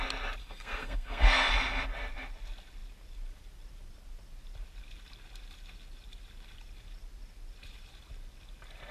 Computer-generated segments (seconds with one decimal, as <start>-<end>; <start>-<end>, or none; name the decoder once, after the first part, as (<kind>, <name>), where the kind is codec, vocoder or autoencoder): 0.4-1.5 (codec, SNAC)